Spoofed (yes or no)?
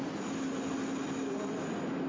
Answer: no